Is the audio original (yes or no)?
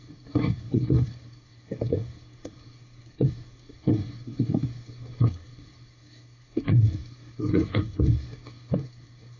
no